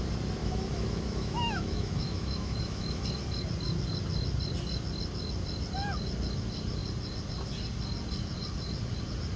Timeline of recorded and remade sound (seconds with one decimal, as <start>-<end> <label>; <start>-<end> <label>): 0.0-0.4 recorded; 0.4-3.0 remade; 3.0-9.4 recorded